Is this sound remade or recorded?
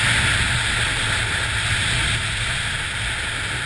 recorded